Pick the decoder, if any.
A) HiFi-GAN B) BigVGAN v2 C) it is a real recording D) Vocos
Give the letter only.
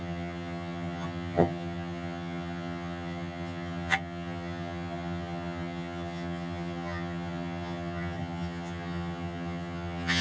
A